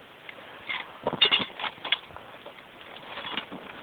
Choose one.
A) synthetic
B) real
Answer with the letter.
B